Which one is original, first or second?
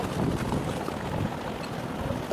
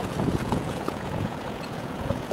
first